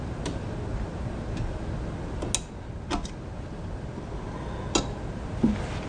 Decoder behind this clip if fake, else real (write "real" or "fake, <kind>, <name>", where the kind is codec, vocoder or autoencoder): real